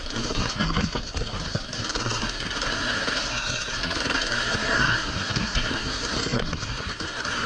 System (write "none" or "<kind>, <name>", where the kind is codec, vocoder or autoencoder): codec, SNAC